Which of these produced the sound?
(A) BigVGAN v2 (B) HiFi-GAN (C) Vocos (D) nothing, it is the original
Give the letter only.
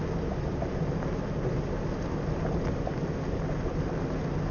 D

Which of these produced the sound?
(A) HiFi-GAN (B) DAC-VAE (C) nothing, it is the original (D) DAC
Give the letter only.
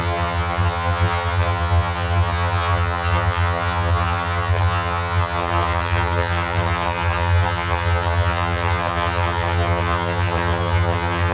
A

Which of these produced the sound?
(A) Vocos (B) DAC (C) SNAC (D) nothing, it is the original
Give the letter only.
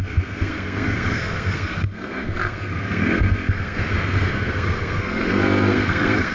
C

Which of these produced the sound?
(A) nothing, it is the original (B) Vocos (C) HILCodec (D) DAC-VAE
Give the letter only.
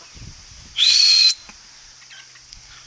A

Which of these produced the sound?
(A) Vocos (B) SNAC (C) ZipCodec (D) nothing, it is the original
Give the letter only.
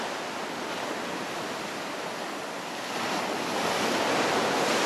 D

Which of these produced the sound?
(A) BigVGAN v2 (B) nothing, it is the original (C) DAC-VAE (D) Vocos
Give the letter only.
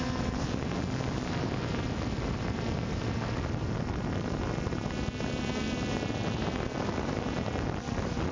B